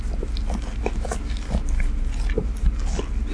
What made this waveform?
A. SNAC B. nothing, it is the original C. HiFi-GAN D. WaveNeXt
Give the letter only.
B